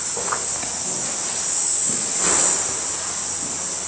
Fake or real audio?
real